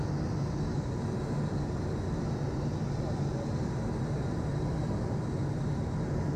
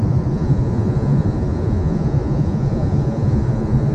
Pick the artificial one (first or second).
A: second